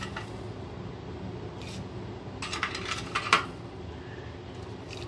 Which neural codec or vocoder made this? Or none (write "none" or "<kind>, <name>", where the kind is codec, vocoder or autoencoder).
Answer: none